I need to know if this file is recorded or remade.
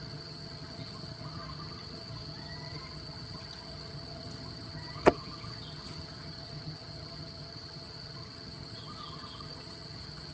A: remade